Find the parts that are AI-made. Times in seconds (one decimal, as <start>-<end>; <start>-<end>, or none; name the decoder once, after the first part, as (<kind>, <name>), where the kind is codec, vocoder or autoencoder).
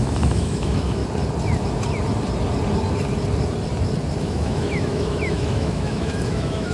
0.0-1.0 (autoencoder, DAC-VAE); 4.2-6.7